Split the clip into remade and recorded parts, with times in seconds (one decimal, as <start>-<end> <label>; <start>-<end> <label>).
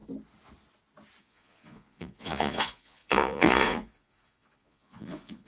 0.0-1.2 recorded; 1.2-5.5 remade